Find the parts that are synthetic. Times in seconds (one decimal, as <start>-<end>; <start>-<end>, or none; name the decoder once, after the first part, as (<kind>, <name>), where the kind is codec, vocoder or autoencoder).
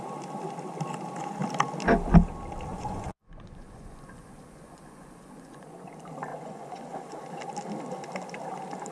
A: 2.7-5.8 (vocoder, Vocos); 6.3-7.2